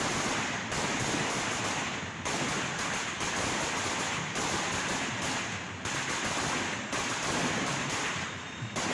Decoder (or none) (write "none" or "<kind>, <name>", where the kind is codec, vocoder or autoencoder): none